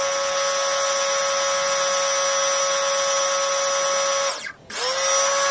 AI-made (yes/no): no